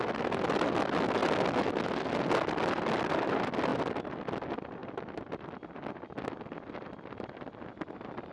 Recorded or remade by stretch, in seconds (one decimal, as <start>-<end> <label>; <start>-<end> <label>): 0.0-8.3 recorded